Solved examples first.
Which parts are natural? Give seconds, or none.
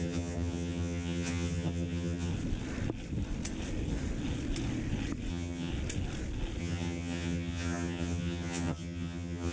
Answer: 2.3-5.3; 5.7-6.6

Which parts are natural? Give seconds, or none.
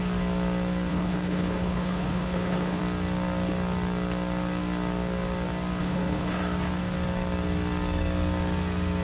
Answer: 0.0-0.9; 2.8-5.8; 6.4-9.0